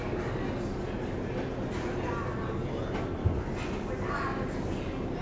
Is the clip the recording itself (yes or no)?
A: yes